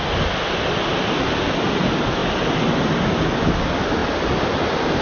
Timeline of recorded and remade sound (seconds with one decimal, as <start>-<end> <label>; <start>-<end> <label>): 0.0-5.0 recorded